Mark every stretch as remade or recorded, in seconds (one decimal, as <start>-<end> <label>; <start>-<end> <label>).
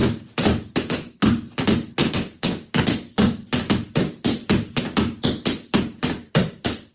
0.0-2.0 recorded; 2.0-2.8 remade; 2.8-6.9 recorded